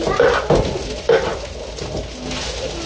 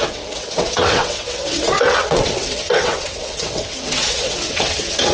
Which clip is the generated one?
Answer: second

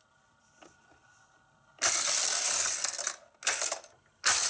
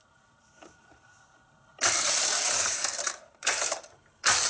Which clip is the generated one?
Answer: second